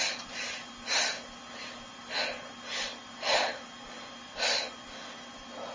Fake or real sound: real